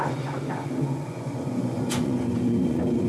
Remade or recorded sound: remade